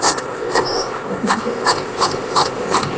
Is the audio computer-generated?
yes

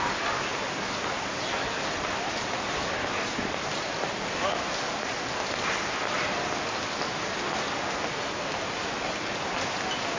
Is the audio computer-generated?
no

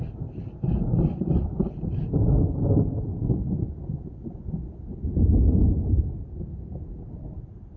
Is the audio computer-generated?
no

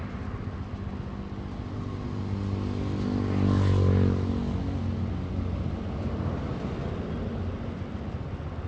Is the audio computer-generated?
no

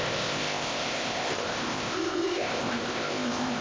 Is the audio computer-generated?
yes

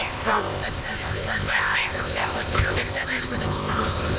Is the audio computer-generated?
yes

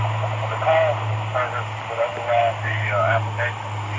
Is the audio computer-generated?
no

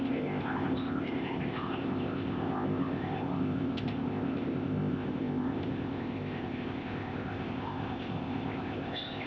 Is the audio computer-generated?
yes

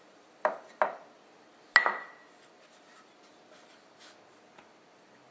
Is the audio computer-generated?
no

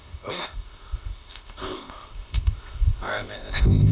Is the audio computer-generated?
yes